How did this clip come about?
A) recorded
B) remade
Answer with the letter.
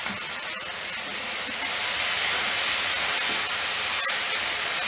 A